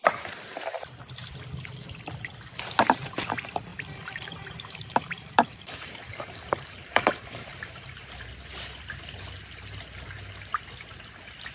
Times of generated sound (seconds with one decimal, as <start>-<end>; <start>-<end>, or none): 3.7-8.1